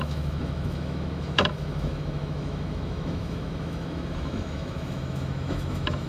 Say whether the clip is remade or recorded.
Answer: remade